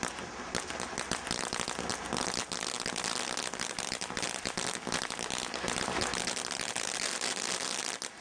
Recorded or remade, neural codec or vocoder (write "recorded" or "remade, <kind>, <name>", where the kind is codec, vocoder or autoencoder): recorded